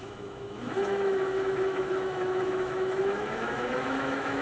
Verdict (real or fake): fake